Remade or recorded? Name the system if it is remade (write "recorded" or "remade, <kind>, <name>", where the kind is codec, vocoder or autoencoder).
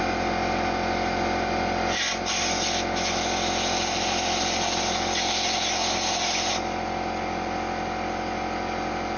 recorded